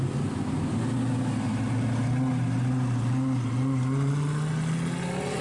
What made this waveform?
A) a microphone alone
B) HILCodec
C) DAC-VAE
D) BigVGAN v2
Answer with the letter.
A